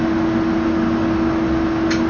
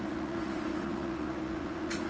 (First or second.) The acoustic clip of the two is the first